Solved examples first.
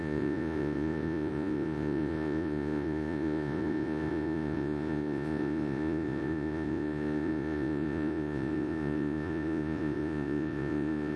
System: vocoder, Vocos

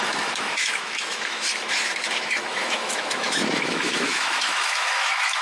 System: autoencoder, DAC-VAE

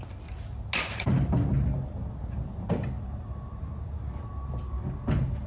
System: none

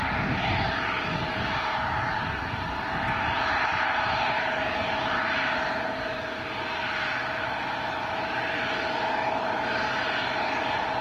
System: none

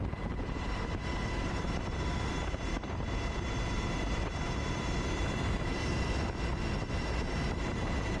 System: vocoder, BigVGAN v2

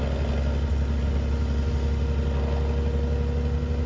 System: none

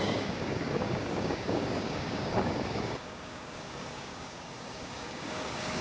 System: codec, DAC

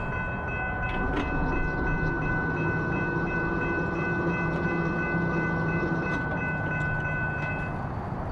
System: none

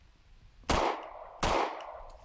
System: none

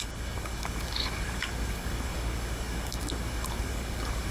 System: codec, DAC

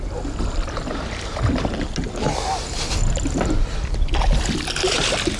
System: none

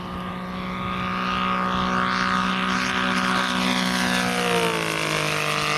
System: none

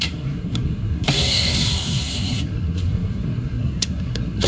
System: codec, SNAC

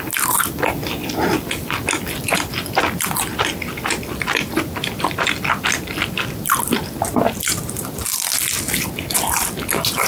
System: none